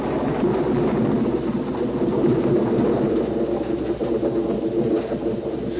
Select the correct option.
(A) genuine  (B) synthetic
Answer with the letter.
A